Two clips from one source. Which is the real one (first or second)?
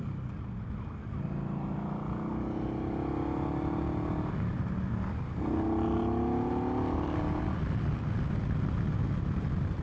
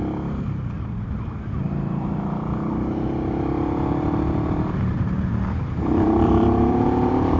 first